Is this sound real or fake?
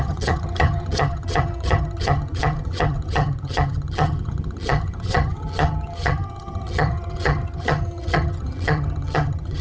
fake